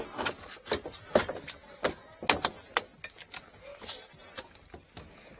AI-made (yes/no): no